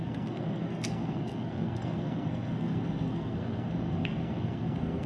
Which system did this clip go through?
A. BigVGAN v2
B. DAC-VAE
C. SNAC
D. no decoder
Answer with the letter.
C